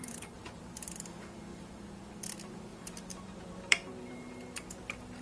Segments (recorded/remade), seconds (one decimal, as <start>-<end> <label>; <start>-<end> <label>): 0.0-0.6 remade; 0.6-1.5 recorded; 1.5-2.1 remade; 2.1-2.7 recorded; 2.7-4.3 remade; 4.3-5.2 recorded

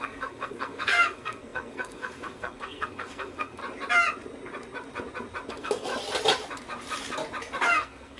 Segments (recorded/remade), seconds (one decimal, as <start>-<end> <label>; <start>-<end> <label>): 0.0-3.6 remade; 3.6-5.5 recorded; 5.5-5.9 remade; 5.9-7.7 recorded; 7.7-8.2 remade

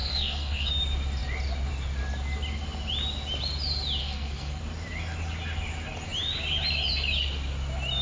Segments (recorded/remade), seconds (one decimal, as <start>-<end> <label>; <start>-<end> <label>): 0.0-0.7 remade; 0.7-4.0 recorded; 4.0-4.6 remade; 4.6-8.0 recorded

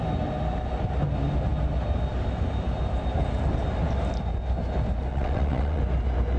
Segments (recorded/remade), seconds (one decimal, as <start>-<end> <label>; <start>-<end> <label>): 0.0-5.1 recorded; 5.1-5.8 remade; 5.8-6.4 recorded